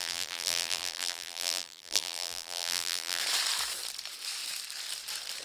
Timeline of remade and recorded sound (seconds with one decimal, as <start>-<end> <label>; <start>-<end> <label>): 0.0-3.2 remade; 3.2-5.4 recorded

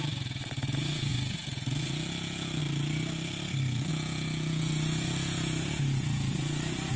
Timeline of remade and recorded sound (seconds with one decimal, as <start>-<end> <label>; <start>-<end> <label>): 0.0-2.6 remade; 2.6-3.9 recorded; 3.9-7.0 remade

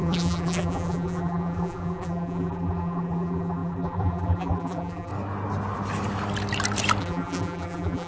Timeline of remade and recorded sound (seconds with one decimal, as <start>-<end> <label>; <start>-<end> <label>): 0.0-5.1 remade; 5.1-7.0 recorded; 7.0-8.1 remade

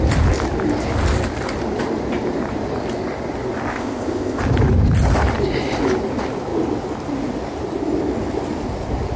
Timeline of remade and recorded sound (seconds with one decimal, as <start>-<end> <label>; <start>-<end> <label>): 0.0-3.7 recorded; 3.7-4.4 remade; 4.4-9.2 recorded

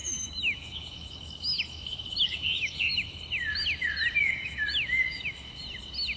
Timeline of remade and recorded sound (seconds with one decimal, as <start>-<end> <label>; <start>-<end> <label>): 0.0-3.2 remade; 3.2-4.2 recorded; 4.2-5.6 remade; 5.6-6.2 recorded

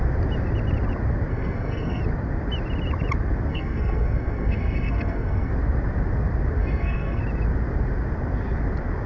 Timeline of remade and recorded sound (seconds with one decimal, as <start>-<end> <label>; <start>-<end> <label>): 0.0-1.3 recorded; 1.3-2.0 remade; 2.0-3.5 recorded; 3.5-5.5 remade; 5.5-6.6 recorded; 6.6-7.2 remade; 7.2-9.1 recorded